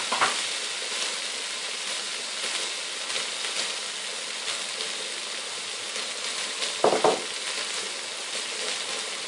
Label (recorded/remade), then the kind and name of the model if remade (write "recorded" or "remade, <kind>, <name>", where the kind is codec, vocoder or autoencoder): recorded